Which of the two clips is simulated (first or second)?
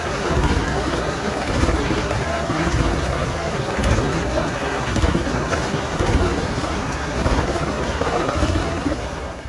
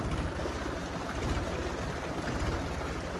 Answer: first